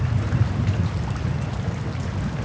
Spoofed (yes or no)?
no